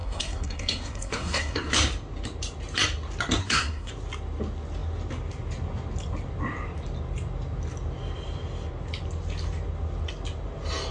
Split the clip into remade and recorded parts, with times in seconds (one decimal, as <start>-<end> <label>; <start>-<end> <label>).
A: 0.0-1.7 remade; 1.7-3.4 recorded; 3.4-3.9 remade; 3.9-10.9 recorded